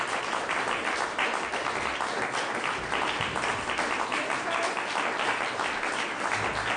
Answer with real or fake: real